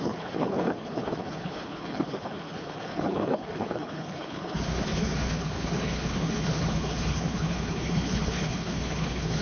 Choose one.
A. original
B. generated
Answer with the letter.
B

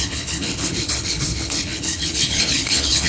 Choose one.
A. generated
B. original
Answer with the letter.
A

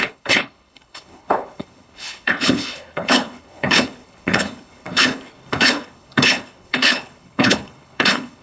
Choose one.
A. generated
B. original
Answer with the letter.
A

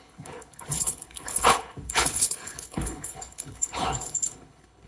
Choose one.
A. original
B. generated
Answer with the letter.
B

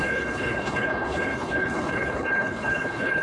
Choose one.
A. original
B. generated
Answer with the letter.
B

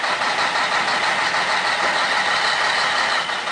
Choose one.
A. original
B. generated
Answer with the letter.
A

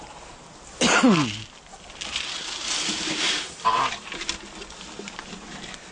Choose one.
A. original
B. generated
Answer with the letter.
A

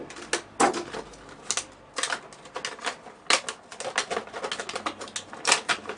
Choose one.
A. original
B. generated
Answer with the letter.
A